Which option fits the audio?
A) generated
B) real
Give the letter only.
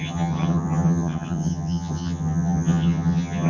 A